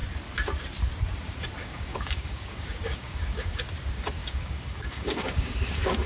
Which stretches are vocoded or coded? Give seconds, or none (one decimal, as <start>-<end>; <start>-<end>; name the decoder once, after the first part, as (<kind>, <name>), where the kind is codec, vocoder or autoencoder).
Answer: 1.6-3.6 (codec, DAC); 4.2-6.1